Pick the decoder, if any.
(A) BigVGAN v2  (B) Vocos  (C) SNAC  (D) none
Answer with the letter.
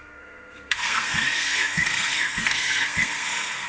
C